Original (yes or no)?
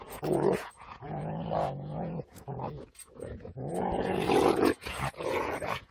no